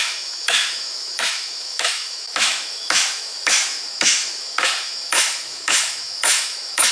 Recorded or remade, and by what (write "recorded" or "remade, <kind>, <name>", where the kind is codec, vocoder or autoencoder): remade, autoencoder, DAC-VAE